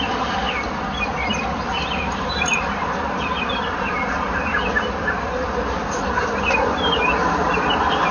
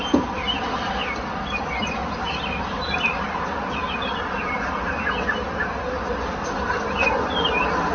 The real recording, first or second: second